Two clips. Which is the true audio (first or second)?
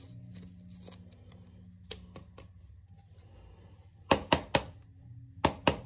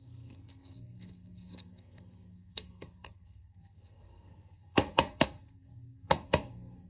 first